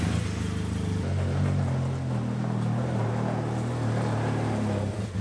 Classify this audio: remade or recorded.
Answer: recorded